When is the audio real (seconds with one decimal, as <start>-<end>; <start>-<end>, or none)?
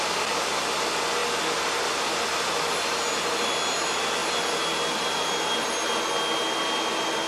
0.0-7.3